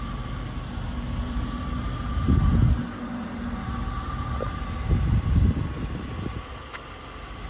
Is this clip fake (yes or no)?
no